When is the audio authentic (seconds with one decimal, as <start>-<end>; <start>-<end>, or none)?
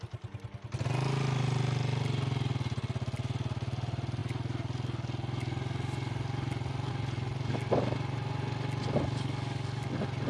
0.0-10.3